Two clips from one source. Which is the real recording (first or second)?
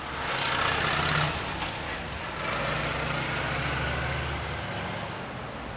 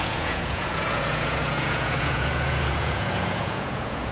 first